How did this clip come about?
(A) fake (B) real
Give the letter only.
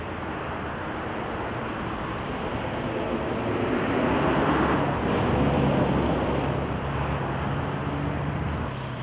B